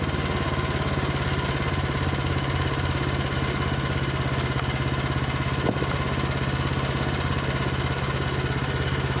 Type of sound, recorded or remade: recorded